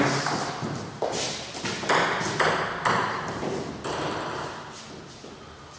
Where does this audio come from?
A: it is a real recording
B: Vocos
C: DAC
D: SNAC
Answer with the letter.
A